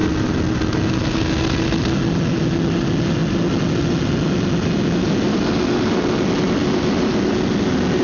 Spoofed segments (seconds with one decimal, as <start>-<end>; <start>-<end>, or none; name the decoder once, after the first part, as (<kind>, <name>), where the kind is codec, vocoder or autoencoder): none